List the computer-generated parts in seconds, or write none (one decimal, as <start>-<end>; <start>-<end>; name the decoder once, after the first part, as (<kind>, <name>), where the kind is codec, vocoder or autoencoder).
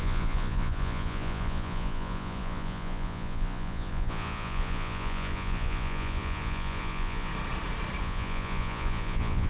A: 0.0-7.3 (vocoder, Vocos); 8.0-9.5